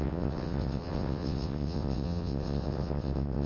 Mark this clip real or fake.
fake